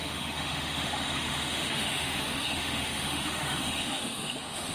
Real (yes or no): no